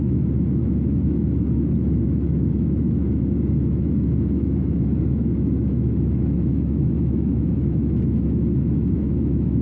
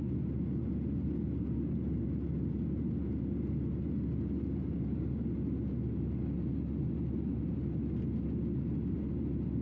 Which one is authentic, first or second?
second